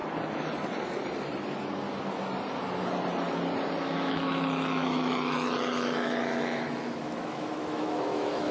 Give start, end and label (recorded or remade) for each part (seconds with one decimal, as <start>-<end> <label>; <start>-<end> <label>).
0.0-3.8 recorded; 3.8-8.5 remade